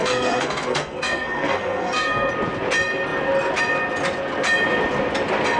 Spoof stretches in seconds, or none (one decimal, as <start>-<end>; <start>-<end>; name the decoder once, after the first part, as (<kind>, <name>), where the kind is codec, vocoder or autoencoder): 0.0-2.3 (codec, SNAC)